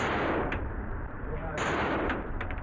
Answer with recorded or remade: remade